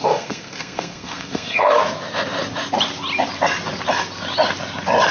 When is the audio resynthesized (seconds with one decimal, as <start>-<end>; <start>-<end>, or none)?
0.0-1.8